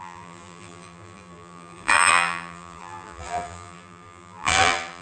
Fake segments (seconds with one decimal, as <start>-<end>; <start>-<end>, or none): 0.0-5.0